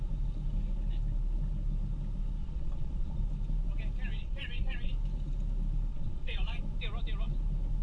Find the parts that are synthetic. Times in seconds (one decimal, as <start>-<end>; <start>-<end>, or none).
2.4-3.2; 4.2-4.9; 5.9-6.6